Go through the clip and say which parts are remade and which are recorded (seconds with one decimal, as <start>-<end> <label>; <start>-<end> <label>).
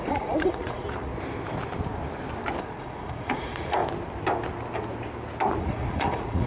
0.0-1.1 remade; 1.1-2.6 recorded; 2.6-3.8 remade; 3.8-5.6 recorded; 5.6-6.5 remade